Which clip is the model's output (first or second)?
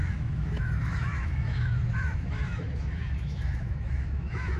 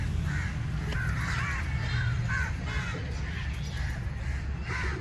first